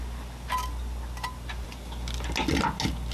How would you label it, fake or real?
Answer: real